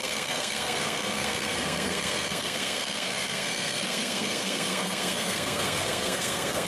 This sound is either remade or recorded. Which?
remade